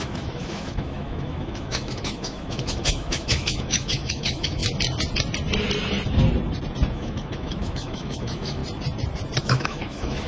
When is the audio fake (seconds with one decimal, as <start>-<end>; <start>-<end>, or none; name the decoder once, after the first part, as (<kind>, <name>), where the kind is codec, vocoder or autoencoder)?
0.0-4.6 (autoencoder, DAC-VAE); 6.9-8.6; 9.4-10.3